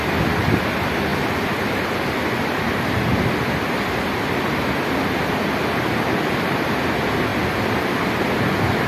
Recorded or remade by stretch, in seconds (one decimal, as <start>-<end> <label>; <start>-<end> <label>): 0.0-8.9 recorded

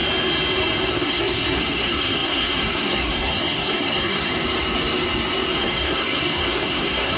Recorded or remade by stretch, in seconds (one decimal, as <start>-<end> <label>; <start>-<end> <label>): 0.0-0.9 recorded; 0.9-4.3 remade; 4.3-5.6 recorded; 5.6-7.2 remade

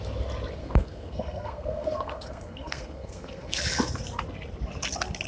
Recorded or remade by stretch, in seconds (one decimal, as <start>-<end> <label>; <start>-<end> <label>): 0.0-0.6 recorded; 0.6-3.6 remade; 3.6-5.3 recorded

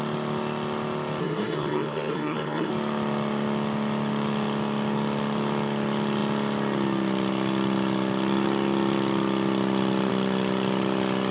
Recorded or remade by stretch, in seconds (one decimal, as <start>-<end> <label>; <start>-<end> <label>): 0.0-1.2 recorded; 1.2-2.7 remade; 2.7-11.3 recorded